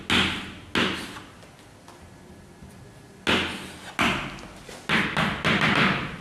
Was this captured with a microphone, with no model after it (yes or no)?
yes